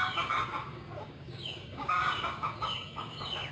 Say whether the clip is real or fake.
fake